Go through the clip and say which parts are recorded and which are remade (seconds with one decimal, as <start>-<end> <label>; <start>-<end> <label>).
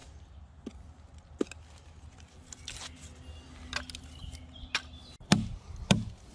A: 0.0-6.3 recorded